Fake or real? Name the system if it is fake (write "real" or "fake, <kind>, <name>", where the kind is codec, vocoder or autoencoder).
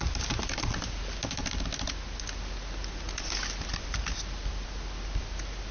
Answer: real